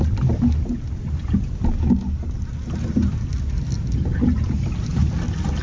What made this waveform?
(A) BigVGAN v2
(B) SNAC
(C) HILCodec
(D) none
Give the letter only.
D